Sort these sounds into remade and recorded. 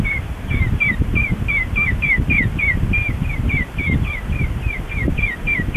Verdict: recorded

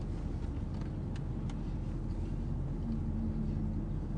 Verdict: recorded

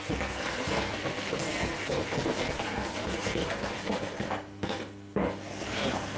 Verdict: remade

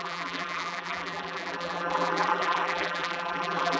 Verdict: remade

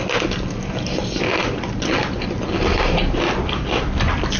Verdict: recorded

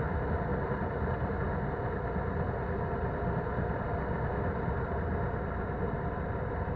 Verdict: recorded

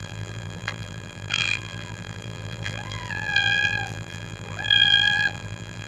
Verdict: remade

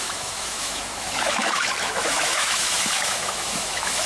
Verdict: remade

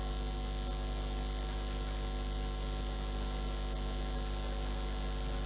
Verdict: recorded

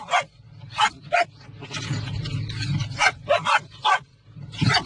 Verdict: recorded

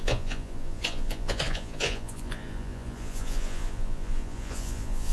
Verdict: remade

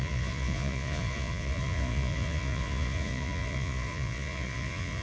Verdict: remade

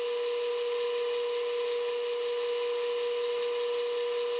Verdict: recorded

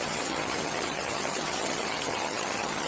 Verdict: remade